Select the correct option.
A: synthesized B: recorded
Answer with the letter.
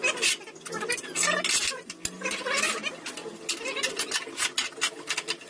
B